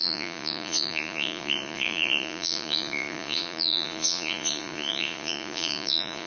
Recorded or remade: remade